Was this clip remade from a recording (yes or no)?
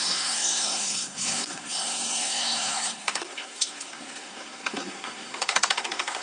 yes